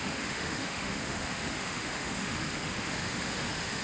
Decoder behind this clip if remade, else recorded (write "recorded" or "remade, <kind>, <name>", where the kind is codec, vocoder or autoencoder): remade, autoencoder, DAC-VAE